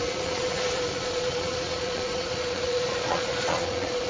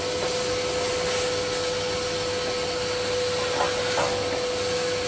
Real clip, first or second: second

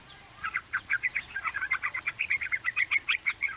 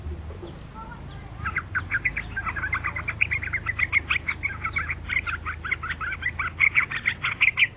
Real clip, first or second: second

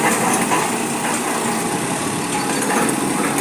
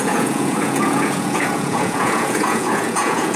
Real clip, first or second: first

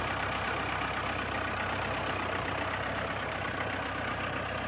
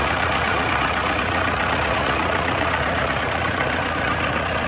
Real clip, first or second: first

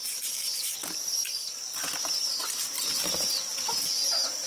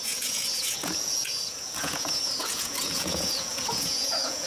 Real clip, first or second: first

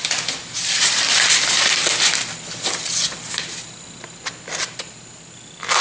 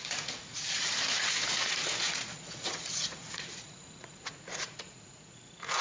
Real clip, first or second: first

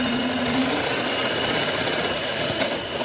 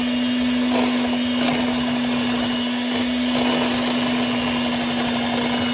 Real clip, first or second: second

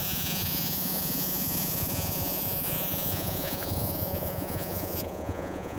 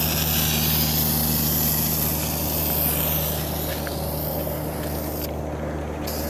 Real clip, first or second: second